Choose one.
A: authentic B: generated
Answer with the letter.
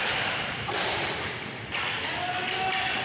A